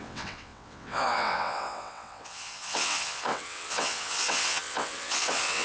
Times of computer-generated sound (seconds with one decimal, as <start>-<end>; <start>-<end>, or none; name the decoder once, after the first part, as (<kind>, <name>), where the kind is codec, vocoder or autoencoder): 0.0-5.6 (vocoder, WaveNeXt)